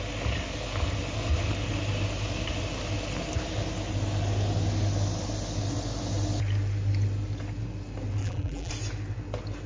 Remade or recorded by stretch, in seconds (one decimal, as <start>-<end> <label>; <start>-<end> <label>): 0.0-8.2 recorded; 8.2-8.7 remade; 8.7-9.7 recorded